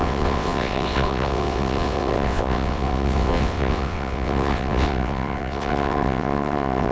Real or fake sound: fake